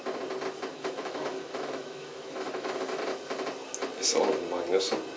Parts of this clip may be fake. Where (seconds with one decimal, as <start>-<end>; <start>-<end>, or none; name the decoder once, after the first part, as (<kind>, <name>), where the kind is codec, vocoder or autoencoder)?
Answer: 0.7-3.0 (autoencoder, DAC-VAE)